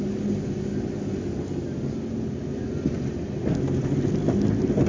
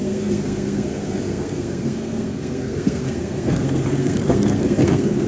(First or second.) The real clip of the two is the first